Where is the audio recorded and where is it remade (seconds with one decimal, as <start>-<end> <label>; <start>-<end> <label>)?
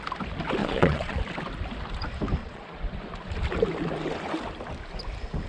0.0-0.6 recorded; 0.6-1.2 remade; 1.2-2.4 recorded; 2.4-3.0 remade; 3.0-5.5 recorded